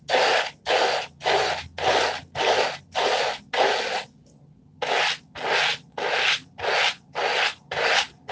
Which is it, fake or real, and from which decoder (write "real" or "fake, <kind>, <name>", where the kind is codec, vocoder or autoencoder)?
real